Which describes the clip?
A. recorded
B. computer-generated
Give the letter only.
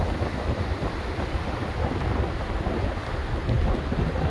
A